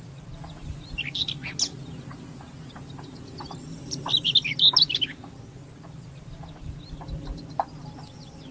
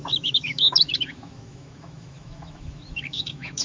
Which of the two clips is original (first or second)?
first